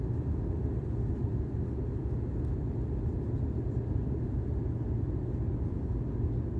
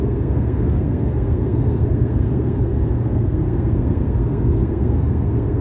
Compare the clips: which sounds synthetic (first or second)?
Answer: second